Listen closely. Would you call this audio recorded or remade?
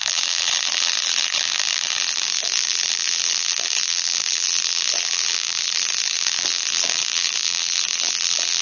remade